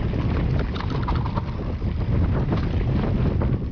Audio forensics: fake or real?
real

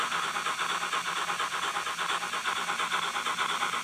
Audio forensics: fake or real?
real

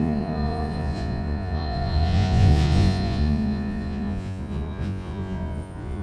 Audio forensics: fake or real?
fake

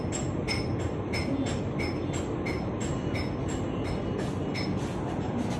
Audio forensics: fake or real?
real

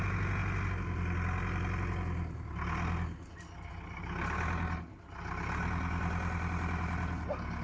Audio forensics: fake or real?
real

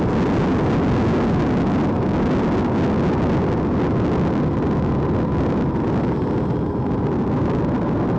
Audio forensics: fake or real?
real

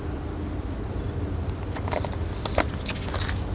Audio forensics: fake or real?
real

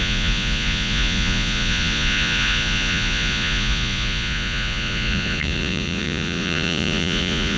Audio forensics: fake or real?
fake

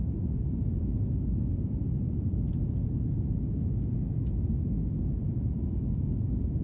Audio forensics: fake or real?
fake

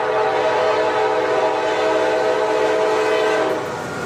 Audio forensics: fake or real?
real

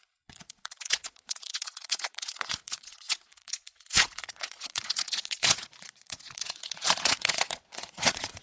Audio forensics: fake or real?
fake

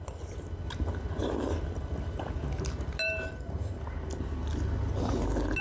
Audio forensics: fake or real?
real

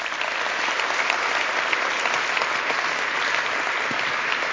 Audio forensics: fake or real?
real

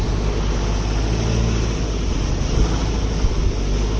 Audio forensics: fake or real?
real